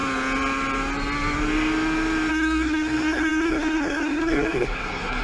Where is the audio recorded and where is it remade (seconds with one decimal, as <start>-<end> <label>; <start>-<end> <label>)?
0.0-2.3 recorded; 2.3-5.2 remade